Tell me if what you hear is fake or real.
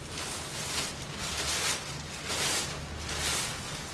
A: real